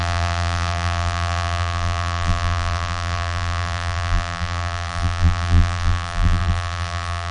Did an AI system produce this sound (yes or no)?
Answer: yes